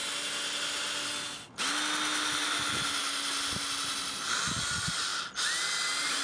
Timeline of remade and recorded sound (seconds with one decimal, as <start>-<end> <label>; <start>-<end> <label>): 0.0-6.2 recorded